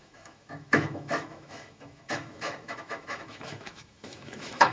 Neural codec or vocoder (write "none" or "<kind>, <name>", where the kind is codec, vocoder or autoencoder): autoencoder, DAC-VAE